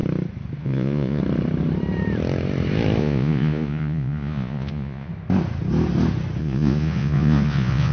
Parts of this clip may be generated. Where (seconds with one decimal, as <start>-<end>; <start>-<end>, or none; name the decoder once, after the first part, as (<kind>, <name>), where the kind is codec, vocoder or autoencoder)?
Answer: 0.6-1.2 (vocoder, Vocos); 3.0-5.1; 6.4-7.9